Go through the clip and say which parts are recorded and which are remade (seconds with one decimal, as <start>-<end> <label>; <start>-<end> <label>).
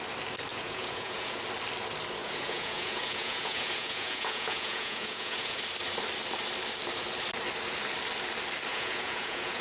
0.0-0.5 recorded; 0.5-1.4 remade; 1.4-2.2 recorded; 2.2-5.6 remade; 5.6-8.7 recorded; 8.7-9.6 remade